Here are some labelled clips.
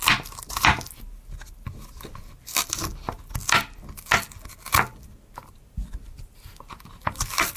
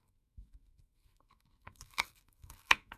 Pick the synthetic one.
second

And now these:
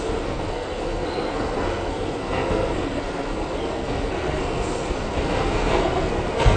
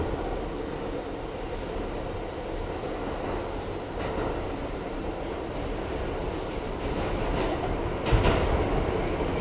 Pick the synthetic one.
first